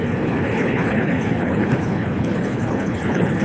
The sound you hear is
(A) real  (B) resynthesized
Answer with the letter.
B